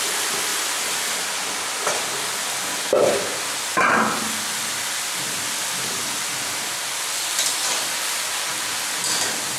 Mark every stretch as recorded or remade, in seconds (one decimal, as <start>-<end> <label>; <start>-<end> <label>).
0.0-9.6 recorded